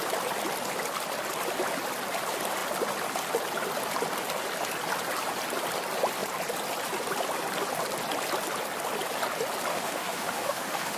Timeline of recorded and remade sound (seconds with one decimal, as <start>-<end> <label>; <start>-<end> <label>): 0.0-9.7 recorded; 9.7-11.0 remade